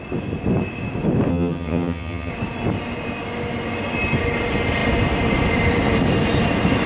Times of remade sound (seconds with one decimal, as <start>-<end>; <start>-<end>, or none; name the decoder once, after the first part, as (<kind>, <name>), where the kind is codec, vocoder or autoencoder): 1.3-2.3 (vocoder, HiFi-GAN)